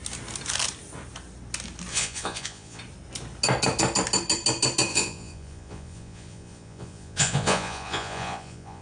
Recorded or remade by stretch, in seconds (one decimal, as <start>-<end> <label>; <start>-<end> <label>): 0.0-1.9 recorded; 1.9-2.8 remade; 2.8-4.9 recorded; 4.9-8.8 remade